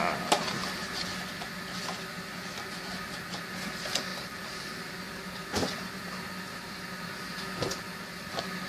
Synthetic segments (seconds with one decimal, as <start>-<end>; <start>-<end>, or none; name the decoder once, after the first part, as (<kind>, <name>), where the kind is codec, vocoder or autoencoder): 4.1-4.9 (vocoder, BigVGAN v2)